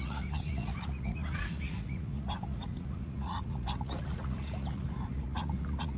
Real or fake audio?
fake